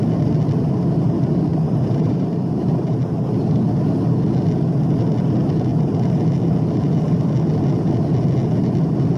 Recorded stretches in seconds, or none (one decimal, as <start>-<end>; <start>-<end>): 0.0-1.5; 3.0-9.2